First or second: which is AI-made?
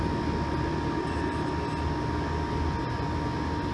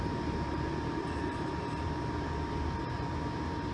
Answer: second